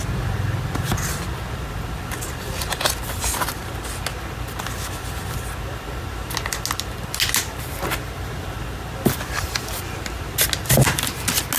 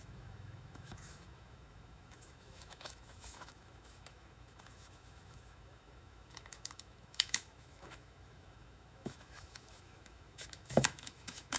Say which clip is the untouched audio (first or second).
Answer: first